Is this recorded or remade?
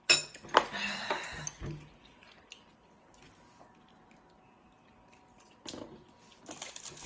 recorded